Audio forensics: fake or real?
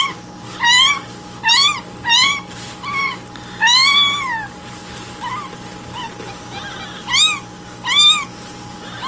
real